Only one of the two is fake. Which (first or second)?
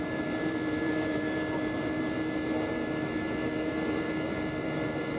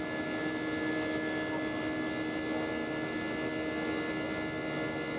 first